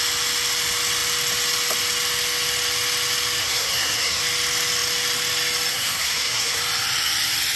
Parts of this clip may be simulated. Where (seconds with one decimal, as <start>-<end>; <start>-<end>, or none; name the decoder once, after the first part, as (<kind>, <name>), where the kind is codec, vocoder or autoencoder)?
3.4-4.2 (codec, SNAC); 5.7-6.6